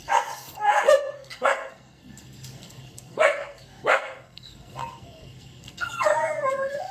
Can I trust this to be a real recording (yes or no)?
no